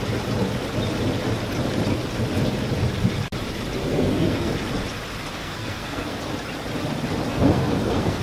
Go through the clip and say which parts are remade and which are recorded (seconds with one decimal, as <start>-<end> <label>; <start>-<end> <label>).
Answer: 0.0-3.8 recorded; 3.8-4.5 remade; 4.5-5.4 recorded; 5.4-6.2 remade; 6.2-7.3 recorded; 7.3-8.2 remade